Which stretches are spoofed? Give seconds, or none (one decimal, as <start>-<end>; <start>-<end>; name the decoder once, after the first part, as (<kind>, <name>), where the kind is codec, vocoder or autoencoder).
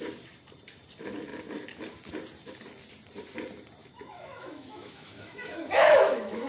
3.8-6.5 (autoencoder, DAC-VAE)